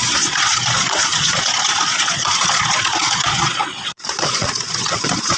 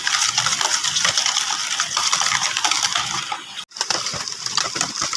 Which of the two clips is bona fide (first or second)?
second